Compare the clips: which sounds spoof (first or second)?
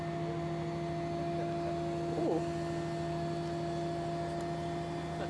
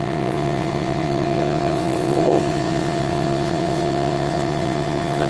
second